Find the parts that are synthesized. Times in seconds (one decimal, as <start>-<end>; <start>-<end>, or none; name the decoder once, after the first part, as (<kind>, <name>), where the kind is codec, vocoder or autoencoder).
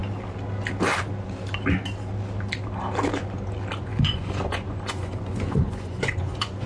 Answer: 3.8-6.7 (vocoder, Vocos)